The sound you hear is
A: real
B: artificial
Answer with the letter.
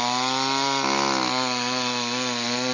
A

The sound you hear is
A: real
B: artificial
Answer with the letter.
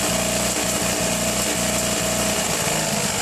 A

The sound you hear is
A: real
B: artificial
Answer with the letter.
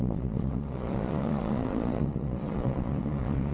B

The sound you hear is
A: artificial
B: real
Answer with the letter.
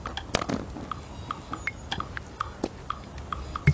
B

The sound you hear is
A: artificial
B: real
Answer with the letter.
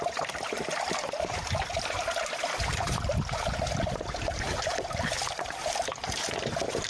B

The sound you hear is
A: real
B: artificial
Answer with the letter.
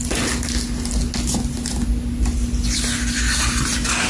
A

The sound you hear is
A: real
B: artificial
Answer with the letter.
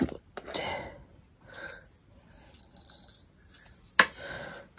A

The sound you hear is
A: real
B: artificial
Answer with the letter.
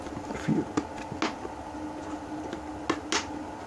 A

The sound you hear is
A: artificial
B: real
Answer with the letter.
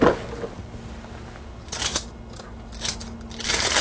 B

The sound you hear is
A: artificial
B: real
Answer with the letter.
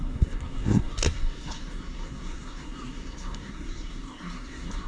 A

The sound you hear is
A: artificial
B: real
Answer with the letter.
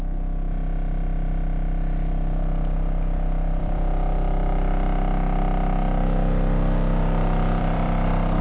A